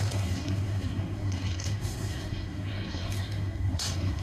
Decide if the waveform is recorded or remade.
remade